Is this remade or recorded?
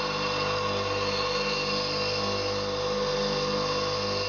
recorded